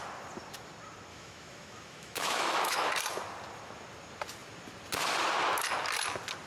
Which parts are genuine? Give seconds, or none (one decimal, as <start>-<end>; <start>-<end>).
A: 0.0-1.1; 2.9-6.5